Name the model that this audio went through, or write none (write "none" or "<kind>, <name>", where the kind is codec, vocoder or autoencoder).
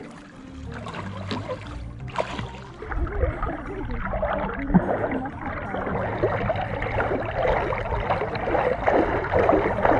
none